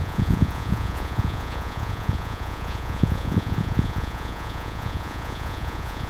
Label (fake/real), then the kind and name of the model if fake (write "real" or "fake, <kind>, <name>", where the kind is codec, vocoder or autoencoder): fake, vocoder, Vocos